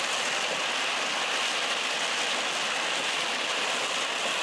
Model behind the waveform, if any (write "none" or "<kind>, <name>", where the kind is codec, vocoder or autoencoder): none